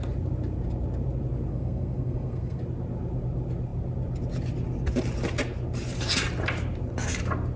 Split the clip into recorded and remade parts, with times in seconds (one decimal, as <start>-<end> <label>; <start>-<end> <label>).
0.0-1.5 recorded; 1.5-2.6 remade; 2.6-7.6 recorded